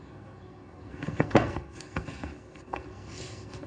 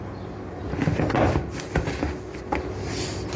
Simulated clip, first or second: first